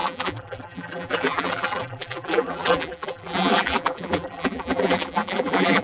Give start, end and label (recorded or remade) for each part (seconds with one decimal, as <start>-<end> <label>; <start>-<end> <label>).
0.0-5.8 remade